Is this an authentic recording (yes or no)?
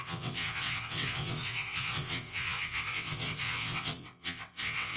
no